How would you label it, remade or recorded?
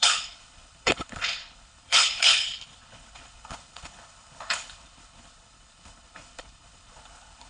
remade